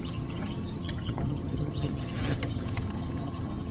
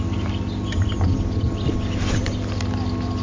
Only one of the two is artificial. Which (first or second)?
first